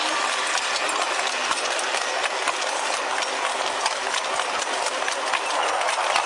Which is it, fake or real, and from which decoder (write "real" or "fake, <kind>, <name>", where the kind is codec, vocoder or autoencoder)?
real